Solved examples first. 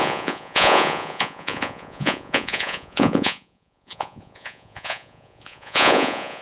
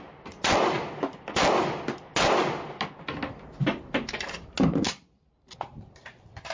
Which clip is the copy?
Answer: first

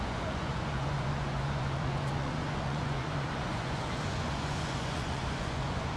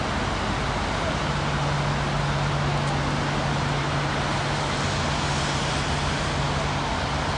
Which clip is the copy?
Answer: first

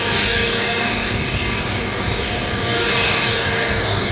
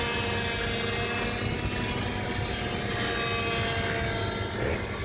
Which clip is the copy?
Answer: first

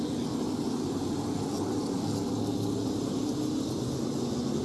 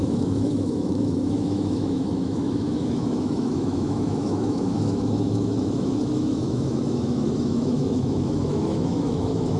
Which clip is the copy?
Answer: second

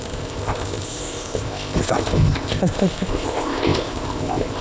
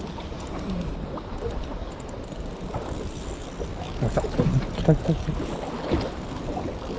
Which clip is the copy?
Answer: first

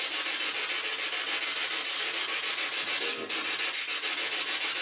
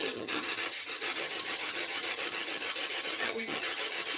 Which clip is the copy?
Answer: second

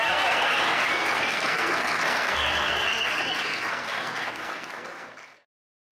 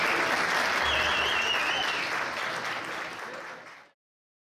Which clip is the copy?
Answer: first